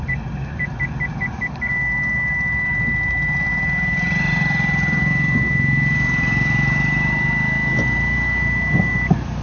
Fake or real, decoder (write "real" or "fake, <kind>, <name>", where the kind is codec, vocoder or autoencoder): real